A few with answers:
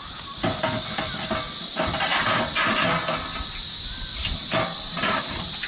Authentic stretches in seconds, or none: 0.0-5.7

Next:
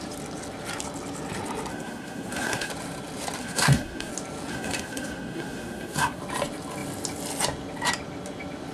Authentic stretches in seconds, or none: 0.0-1.7; 2.7-3.4; 4.1-4.5; 6.2-8.7

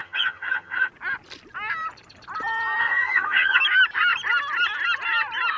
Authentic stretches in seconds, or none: 0.9-2.8; 3.6-5.6

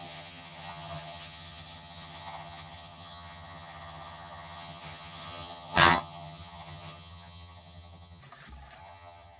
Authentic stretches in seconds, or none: 8.2-8.8

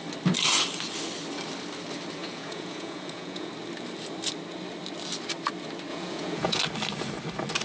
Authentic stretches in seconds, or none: 0.0-2.2; 3.5-5.9; 6.6-7.6